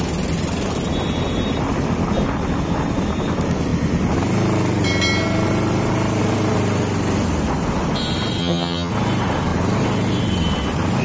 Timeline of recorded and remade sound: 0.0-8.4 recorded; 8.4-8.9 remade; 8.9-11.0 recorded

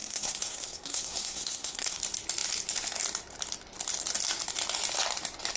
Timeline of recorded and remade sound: 0.0-2.0 remade; 2.0-5.6 recorded

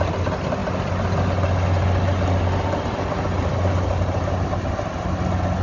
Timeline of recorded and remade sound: 0.0-5.6 recorded